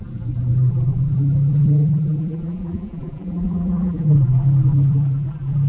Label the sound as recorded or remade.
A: remade